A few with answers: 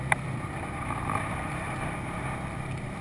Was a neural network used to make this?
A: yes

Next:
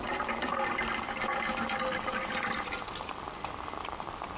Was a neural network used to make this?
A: no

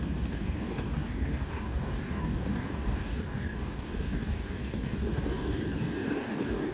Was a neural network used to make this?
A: yes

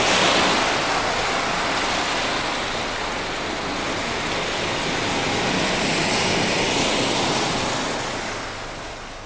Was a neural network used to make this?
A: no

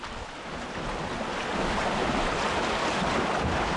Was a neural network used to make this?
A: no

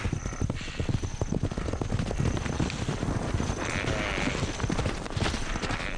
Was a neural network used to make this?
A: no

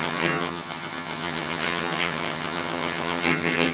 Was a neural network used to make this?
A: yes